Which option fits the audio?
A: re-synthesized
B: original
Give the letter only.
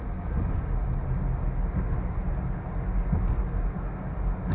B